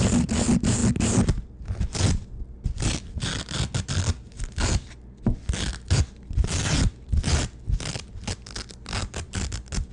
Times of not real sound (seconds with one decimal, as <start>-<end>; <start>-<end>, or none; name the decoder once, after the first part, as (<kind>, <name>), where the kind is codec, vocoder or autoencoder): none